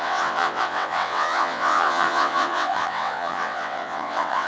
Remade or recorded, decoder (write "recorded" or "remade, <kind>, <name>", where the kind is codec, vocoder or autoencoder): remade, vocoder, WaveNeXt